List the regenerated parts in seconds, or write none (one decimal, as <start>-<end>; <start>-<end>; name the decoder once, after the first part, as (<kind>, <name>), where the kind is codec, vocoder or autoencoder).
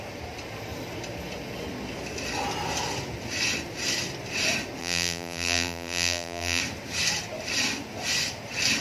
4.8-6.6 (vocoder, BigVGAN v2)